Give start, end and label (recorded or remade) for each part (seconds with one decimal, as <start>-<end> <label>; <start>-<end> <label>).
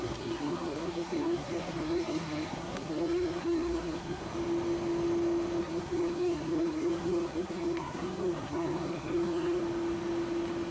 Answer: 0.0-4.2 remade; 4.2-5.6 recorded; 5.6-9.6 remade; 9.6-10.7 recorded